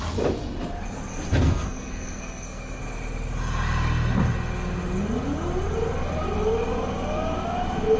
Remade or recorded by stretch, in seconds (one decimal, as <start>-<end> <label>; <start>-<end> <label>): 0.0-1.4 recorded; 1.4-2.8 remade; 2.8-8.0 recorded